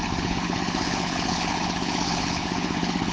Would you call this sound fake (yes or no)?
yes